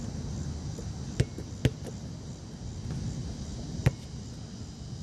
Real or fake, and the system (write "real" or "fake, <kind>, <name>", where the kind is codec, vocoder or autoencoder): real